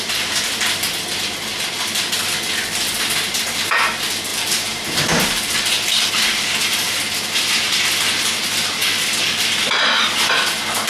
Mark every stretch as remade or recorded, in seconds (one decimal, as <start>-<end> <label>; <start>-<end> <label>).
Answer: 0.0-4.3 recorded; 4.3-6.1 remade; 6.1-10.9 recorded